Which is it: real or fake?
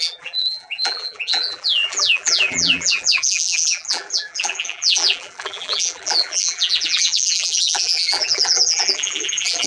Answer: fake